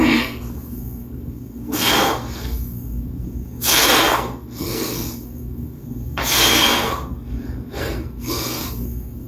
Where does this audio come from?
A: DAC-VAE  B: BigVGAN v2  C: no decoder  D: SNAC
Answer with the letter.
D